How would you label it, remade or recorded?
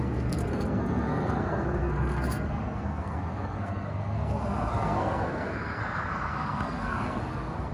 remade